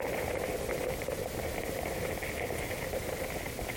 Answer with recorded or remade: recorded